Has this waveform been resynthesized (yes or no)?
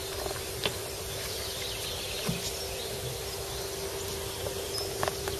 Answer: no